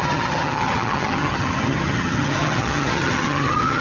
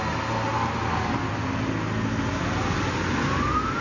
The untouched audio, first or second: second